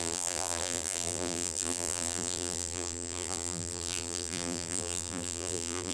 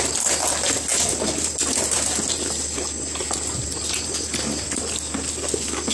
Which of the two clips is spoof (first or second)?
first